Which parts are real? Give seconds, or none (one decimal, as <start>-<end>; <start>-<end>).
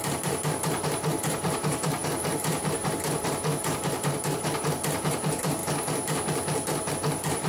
5.6-6.9